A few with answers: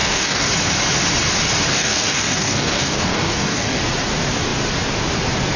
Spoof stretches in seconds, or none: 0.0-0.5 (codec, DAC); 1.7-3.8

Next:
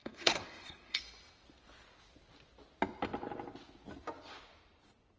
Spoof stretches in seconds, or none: 0.0-1.0 (codec, SNAC)

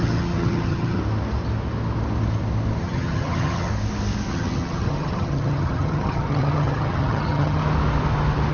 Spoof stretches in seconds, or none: 0.0-1.0 (vocoder, HiFi-GAN); 2.8-3.7; 4.3-7.6